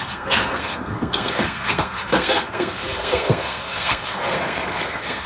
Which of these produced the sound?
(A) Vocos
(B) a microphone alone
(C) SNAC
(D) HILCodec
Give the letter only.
C